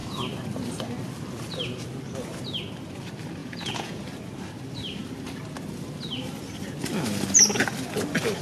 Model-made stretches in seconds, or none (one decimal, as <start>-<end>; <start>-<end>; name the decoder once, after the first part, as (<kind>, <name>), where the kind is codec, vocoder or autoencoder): 3.4-4.0 (vocoder, Vocos)